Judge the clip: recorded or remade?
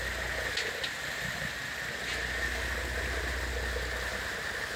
recorded